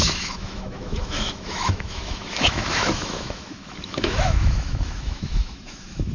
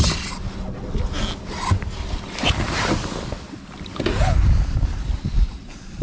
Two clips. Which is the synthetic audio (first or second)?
first